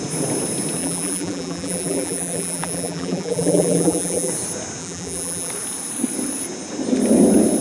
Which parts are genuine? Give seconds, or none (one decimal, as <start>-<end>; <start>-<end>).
0.0-0.8; 4.3-4.8; 5.5-7.6